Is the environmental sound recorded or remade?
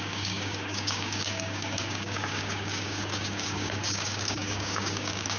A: remade